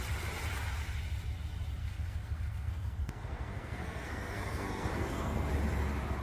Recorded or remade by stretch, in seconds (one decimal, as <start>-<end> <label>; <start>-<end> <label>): 0.0-1.8 recorded; 1.8-5.5 remade; 5.5-6.2 recorded